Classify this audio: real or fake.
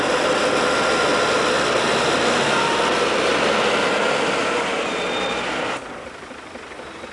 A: real